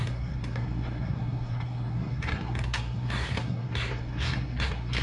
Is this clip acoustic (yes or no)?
no